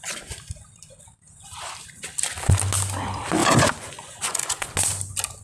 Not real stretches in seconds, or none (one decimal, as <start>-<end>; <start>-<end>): 3.4-4.7